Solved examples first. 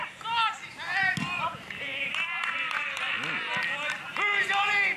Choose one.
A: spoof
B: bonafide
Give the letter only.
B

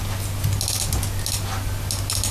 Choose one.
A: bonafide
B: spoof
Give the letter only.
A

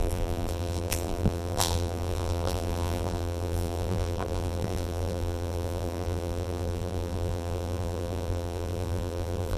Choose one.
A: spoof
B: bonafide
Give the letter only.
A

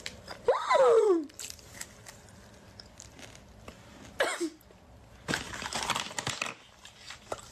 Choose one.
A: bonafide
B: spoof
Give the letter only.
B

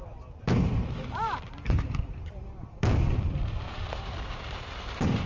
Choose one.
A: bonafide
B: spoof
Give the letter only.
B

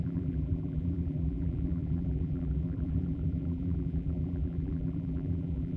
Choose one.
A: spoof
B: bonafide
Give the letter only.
A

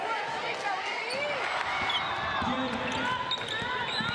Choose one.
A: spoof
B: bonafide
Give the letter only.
B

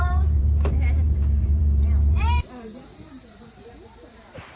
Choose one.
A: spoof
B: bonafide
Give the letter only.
A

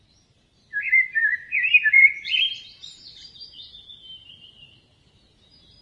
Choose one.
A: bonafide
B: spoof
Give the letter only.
B